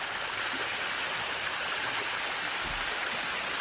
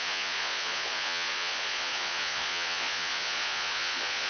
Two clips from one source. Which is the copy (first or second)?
second